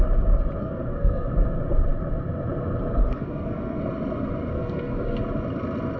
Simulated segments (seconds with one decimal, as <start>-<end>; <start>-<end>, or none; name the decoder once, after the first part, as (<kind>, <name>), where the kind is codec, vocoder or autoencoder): 0.6-1.3 (codec, SNAC); 3.0-3.8; 4.5-5.2